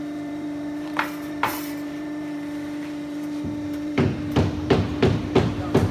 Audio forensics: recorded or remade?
remade